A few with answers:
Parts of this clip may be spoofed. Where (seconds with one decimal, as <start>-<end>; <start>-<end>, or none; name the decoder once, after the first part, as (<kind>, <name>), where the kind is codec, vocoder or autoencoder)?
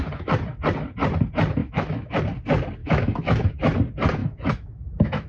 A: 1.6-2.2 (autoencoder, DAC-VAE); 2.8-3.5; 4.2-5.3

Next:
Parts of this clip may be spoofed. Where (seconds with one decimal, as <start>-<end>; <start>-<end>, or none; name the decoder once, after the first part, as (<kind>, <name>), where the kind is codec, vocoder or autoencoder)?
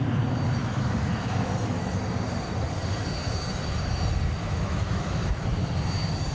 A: 0.6-1.9 (autoencoder, DAC-VAE); 4.4-5.3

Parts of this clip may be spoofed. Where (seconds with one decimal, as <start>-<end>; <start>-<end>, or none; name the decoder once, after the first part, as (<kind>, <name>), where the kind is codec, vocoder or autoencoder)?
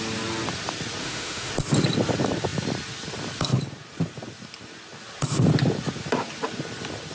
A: 1.0-1.5 (autoencoder, DAC-VAE)